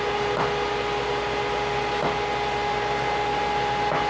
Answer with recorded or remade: recorded